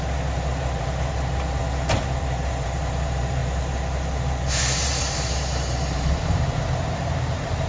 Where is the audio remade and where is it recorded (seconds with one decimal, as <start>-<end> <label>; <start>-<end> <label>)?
0.0-1.6 remade; 1.6-2.2 recorded; 2.2-7.7 remade